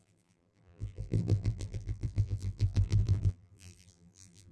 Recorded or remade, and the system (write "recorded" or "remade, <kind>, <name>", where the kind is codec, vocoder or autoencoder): remade, vocoder, BigVGAN v2